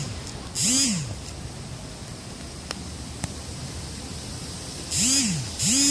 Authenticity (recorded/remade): recorded